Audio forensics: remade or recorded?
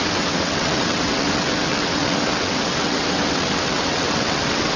remade